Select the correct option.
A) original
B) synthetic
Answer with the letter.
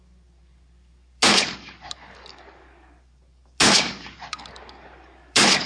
B